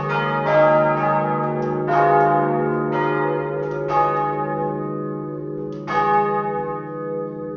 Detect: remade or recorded recorded